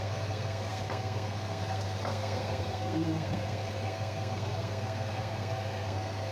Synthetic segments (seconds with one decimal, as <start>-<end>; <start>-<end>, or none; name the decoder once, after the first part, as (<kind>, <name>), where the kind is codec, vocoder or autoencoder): 0.0-6.3 (codec, SNAC)